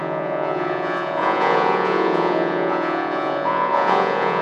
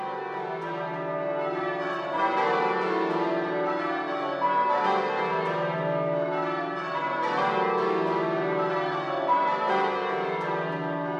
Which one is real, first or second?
second